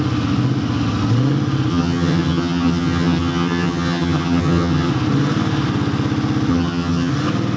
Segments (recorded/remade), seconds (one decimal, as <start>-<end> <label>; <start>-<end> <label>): 0.0-1.7 recorded; 1.7-4.9 remade; 4.9-6.5 recorded; 6.5-7.1 remade; 7.1-7.6 recorded